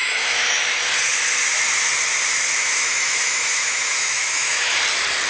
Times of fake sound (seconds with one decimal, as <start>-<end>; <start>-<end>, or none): 0.0-0.6; 2.6-4.8